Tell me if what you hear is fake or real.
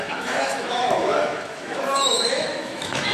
fake